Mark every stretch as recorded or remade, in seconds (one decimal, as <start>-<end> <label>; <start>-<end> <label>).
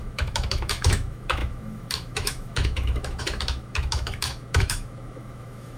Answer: 0.0-5.8 remade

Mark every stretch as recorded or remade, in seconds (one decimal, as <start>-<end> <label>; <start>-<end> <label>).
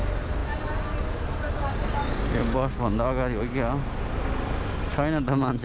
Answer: 0.0-2.6 recorded; 2.6-3.4 remade; 3.4-5.6 recorded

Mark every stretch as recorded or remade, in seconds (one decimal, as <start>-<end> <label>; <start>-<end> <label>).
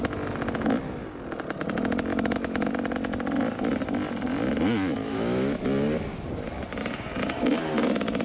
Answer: 0.0-2.1 recorded; 2.1-2.7 remade; 2.7-5.0 recorded; 5.0-5.6 remade; 5.6-8.2 recorded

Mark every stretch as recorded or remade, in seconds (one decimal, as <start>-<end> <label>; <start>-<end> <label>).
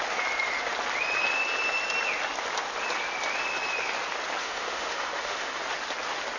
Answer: 0.0-4.4 recorded; 4.4-5.6 remade; 5.6-6.4 recorded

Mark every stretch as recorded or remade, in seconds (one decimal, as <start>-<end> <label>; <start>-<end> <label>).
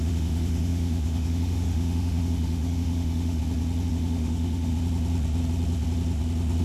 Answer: 0.0-3.4 remade; 3.4-3.9 recorded; 3.9-4.7 remade; 4.7-6.6 recorded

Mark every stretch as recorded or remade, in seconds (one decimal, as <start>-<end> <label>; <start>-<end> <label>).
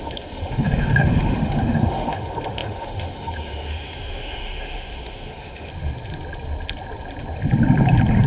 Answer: 0.0-5.7 remade; 5.7-8.3 recorded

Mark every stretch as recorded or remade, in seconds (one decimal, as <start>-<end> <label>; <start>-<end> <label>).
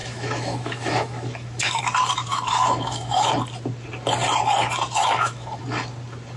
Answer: 0.0-1.8 remade; 1.8-2.3 recorded; 2.3-3.3 remade; 3.3-5.0 recorded; 5.0-5.6 remade; 5.6-6.4 recorded